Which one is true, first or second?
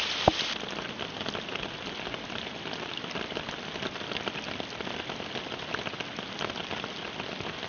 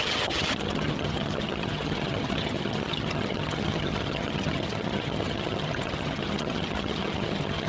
first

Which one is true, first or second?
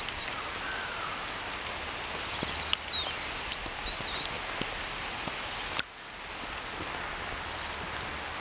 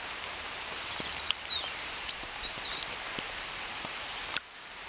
first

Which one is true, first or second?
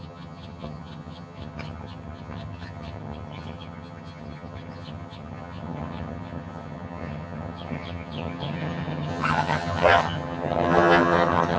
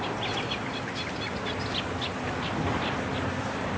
second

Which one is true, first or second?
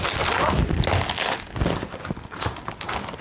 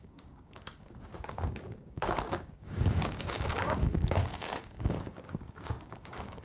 first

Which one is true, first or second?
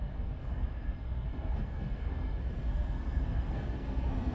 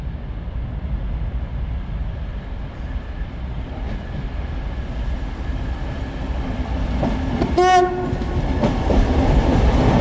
second